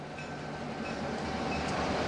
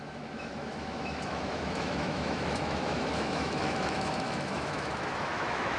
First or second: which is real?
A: first